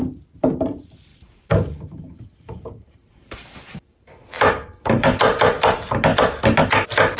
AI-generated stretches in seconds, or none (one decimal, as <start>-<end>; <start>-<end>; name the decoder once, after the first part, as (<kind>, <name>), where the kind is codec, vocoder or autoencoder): 1.1-5.4 (vocoder, BigVGAN v2)